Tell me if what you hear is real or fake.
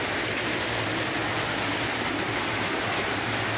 real